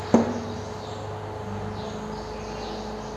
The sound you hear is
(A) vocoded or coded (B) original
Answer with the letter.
B